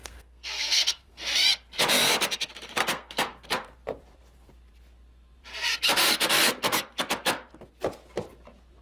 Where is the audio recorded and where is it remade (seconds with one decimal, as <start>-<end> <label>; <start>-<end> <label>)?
0.0-1.2 remade; 1.2-2.8 recorded; 2.8-3.5 remade; 3.5-8.8 recorded